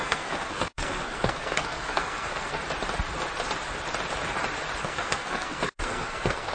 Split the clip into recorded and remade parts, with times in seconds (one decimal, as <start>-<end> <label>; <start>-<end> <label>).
0.0-2.6 remade; 2.6-4.8 recorded; 4.8-6.5 remade